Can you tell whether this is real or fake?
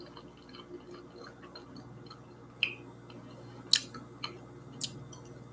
real